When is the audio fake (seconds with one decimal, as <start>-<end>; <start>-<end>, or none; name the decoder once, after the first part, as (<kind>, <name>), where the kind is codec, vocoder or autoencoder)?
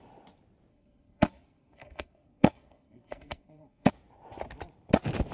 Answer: 0.7-3.9 (codec, SNAC)